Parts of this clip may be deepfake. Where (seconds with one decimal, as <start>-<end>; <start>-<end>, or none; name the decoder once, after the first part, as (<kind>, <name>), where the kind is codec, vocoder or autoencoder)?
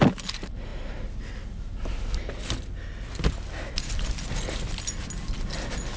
none